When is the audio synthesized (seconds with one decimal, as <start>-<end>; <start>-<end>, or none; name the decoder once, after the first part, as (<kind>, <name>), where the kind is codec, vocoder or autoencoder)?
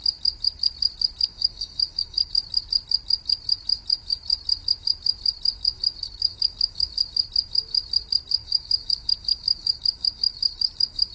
1.3-2.3 (codec, DAC); 6.3-6.9; 8.4-11.1